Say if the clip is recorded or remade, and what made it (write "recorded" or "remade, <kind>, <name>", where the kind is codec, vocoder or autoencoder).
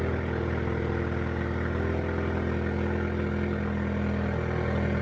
recorded